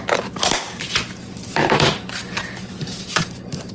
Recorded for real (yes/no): no